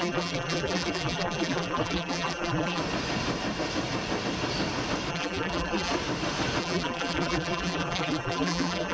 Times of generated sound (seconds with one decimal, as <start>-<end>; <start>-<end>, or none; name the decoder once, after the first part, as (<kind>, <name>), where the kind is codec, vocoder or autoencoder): 0.0-2.8 (vocoder, BigVGAN v2); 5.1-5.9; 6.6-8.9